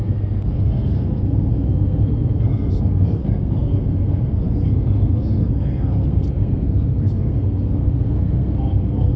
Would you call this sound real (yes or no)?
no